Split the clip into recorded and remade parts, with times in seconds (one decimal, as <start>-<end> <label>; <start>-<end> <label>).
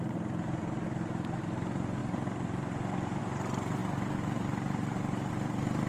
0.0-5.9 recorded